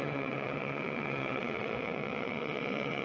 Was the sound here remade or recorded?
remade